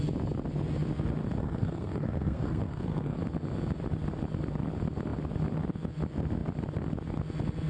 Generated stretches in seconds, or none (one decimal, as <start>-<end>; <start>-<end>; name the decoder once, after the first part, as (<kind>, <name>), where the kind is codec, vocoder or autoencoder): 1.4-3.2 (codec, SNAC)